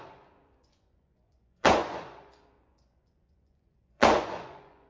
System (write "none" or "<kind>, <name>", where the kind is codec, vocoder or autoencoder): vocoder, Vocos